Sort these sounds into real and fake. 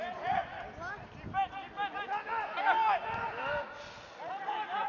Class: real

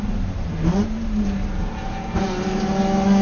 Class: fake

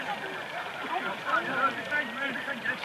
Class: fake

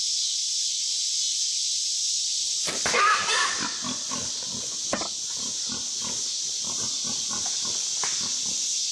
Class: real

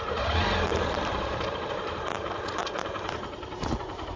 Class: fake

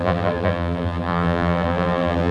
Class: fake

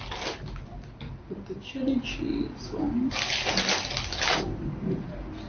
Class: real